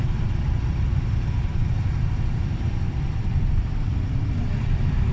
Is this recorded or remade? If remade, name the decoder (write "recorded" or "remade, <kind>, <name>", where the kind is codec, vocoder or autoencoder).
remade, vocoder, BigVGAN v2